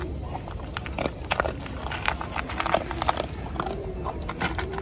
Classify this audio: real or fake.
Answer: real